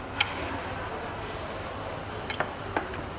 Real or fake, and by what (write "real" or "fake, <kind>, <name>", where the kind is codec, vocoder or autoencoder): real